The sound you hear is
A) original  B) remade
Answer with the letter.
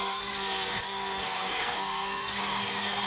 B